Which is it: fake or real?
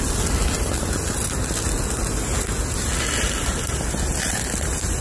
real